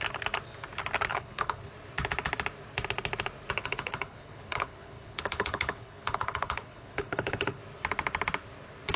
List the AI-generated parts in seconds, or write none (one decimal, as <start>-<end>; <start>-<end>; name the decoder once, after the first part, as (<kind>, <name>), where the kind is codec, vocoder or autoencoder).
1.1-1.7 (codec, HILCodec); 3.6-7.6